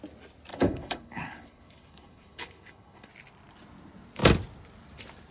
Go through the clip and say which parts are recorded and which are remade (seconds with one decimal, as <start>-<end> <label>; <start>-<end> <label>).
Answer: 0.0-0.5 recorded; 0.5-3.1 remade; 3.1-5.3 recorded

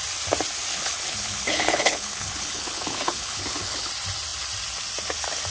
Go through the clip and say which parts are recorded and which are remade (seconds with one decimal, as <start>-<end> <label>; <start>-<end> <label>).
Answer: 0.0-0.7 recorded; 0.7-3.9 remade; 3.9-5.5 recorded

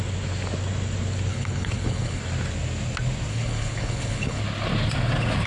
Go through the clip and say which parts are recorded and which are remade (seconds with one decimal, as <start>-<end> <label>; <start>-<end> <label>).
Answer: 0.0-1.3 recorded; 1.3-2.2 remade; 2.2-3.3 recorded; 3.3-4.4 remade; 4.4-5.5 recorded

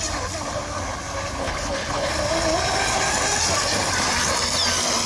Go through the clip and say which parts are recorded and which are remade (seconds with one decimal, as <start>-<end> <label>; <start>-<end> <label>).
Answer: 0.0-1.4 recorded; 1.4-2.1 remade; 2.1-5.1 recorded